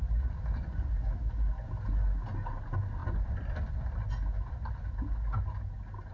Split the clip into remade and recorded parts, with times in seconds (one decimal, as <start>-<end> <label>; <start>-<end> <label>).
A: 0.0-3.0 recorded; 3.0-4.0 remade; 4.0-6.1 recorded